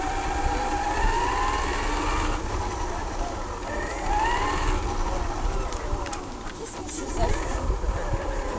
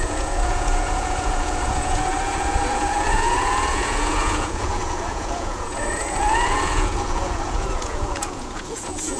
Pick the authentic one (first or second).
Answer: first